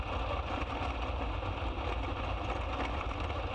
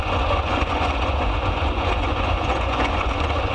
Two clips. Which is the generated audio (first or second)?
second